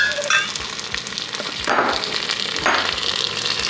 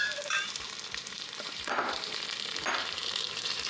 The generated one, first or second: second